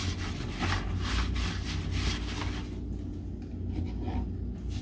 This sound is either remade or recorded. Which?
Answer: recorded